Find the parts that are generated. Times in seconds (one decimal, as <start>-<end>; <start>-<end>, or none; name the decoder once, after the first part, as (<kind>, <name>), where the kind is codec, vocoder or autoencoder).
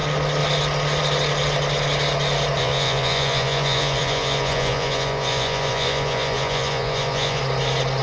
2.6-7.4 (vocoder, Vocos)